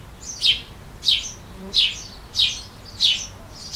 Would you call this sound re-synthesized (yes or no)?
no